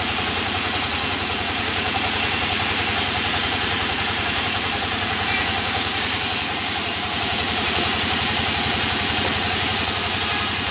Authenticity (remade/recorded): remade